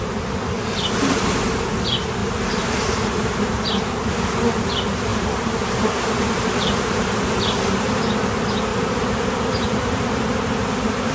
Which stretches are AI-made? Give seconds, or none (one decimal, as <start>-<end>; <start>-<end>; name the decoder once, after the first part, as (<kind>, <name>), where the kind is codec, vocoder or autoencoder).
2.2-3.6 (vocoder, BigVGAN v2); 5.1-7.4; 8.7-10.1